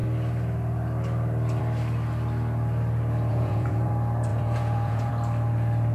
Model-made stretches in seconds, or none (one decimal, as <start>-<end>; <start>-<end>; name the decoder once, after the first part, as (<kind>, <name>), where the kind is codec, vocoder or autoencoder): 3.3-3.9 (vocoder, Vocos); 4.3-5.1